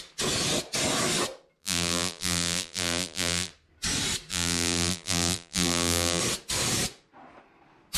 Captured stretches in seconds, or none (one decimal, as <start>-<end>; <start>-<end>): 0.0-1.6; 3.5-4.3; 6.2-8.0